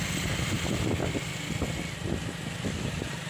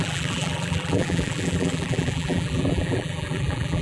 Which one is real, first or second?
first